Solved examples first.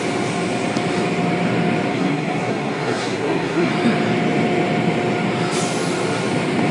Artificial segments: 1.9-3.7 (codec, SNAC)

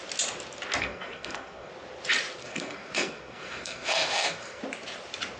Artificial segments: 0.8-1.7 (codec, SNAC); 2.4-4.6

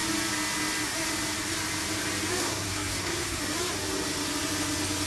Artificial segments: 2.4-3.4 (codec, SNAC)

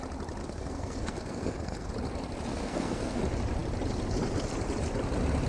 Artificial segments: 0.4-1.9 (codec, SNAC); 2.5-3.2

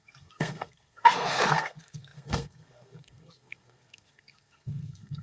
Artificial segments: 0.0-5.2 (codec, SNAC)